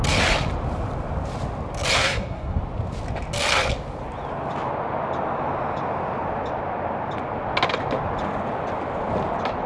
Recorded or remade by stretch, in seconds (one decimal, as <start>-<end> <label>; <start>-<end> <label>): 0.0-2.0 recorded; 2.0-2.6 remade; 2.6-9.7 recorded